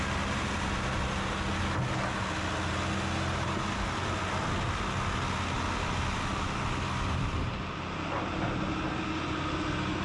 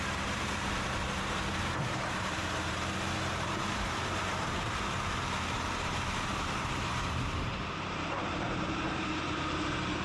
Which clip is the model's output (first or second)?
second